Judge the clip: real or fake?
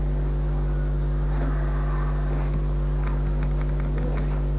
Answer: real